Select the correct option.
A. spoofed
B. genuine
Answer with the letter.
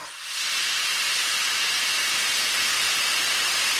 B